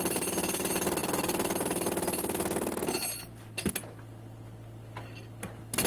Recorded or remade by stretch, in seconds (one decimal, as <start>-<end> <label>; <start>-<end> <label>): 0.0-5.9 recorded